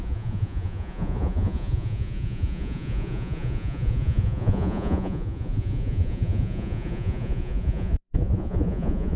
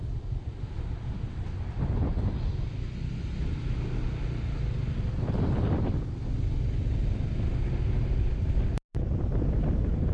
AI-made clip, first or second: first